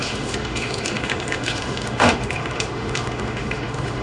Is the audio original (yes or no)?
no